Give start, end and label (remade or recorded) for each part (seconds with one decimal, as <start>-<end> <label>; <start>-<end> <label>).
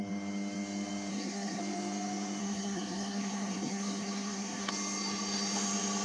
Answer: 0.0-1.1 recorded; 1.1-1.6 remade; 1.6-2.4 recorded; 2.4-4.7 remade; 4.7-6.0 recorded